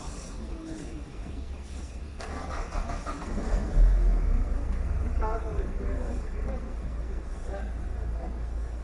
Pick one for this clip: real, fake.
fake